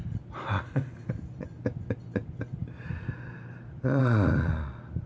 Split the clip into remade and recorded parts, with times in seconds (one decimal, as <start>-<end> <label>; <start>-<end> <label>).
0.0-5.1 recorded